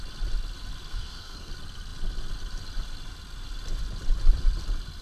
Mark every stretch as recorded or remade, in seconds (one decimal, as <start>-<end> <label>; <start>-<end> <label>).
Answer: 0.0-0.9 recorded; 0.9-1.5 remade; 1.5-5.0 recorded